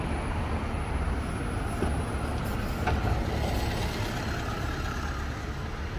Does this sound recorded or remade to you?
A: recorded